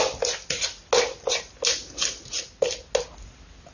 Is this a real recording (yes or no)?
yes